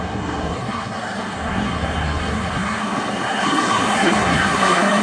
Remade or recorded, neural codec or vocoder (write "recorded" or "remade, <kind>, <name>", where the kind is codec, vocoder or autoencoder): remade, codec, SNAC